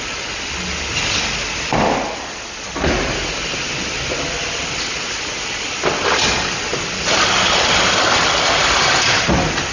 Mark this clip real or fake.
real